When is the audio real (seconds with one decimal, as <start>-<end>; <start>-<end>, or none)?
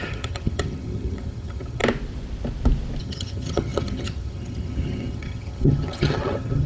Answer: 1.8-3.0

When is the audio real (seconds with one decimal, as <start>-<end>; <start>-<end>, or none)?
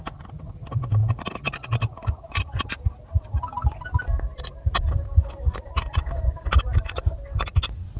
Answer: 0.0-8.0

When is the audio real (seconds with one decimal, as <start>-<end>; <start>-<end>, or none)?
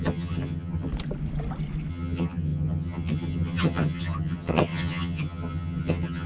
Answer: 0.9-1.9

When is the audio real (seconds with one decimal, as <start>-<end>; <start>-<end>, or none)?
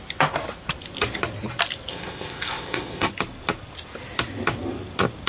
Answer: 0.0-1.9; 3.1-5.3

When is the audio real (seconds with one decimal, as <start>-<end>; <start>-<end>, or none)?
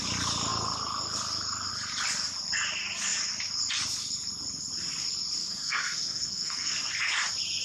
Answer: 0.0-5.4; 6.7-7.6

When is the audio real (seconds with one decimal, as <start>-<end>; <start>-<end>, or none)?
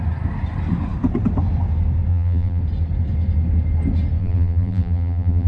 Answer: 0.0-2.1; 2.6-4.2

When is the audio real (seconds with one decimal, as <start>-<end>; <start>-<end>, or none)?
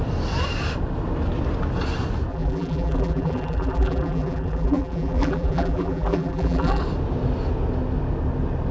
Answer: 0.0-2.3; 6.8-8.7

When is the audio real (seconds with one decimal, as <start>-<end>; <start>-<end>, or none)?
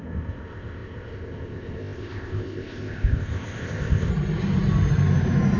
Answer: 4.1-5.6